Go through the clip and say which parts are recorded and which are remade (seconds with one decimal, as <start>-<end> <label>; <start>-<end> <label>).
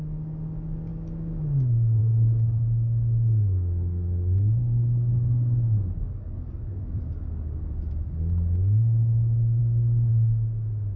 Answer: 0.0-2.0 recorded; 2.0-7.2 remade; 7.2-9.6 recorded; 9.6-10.1 remade; 10.1-11.0 recorded